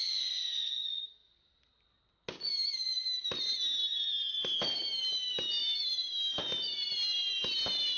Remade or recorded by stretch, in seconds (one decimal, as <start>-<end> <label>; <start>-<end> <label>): 0.0-8.0 recorded